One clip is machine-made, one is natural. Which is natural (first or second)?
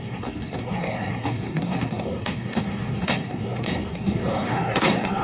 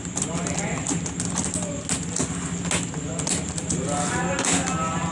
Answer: second